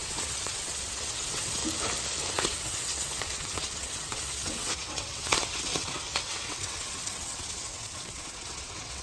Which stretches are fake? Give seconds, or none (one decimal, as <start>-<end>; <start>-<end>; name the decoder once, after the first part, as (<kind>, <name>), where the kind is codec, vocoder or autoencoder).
0.0-1.6 (vocoder, WaveNeXt); 2.3-9.0